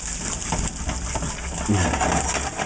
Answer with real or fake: real